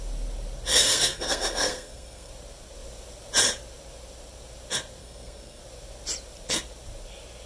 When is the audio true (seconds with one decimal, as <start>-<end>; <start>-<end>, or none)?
0.0-0.7; 2.3-5.0; 5.6-7.5